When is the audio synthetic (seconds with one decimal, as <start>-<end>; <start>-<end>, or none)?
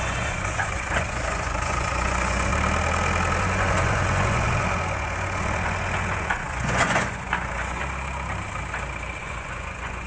0.0-2.5; 3.4-7.8; 9.2-10.1